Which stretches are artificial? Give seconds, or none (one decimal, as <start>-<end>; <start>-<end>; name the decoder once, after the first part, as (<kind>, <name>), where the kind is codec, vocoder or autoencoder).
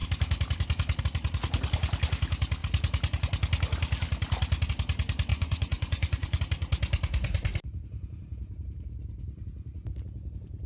5.3-6.4 (vocoder, Vocos)